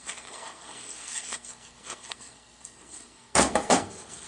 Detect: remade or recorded remade